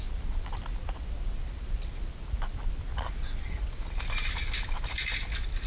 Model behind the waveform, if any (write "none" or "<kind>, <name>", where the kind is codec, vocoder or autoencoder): none